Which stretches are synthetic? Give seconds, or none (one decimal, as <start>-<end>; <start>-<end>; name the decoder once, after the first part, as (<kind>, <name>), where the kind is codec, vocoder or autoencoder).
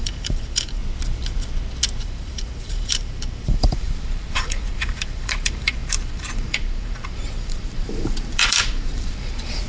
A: 0.0-0.8 (vocoder, BigVGAN v2); 2.0-9.7